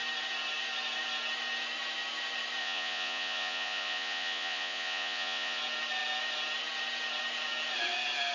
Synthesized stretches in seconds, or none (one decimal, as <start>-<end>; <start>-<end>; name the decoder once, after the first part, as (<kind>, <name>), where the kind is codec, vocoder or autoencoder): 2.6-5.6 (vocoder, Vocos)